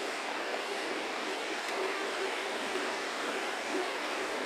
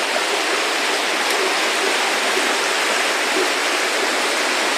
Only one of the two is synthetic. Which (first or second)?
first